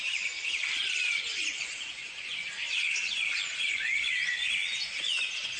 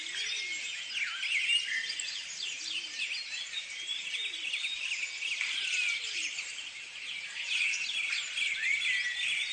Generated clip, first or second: first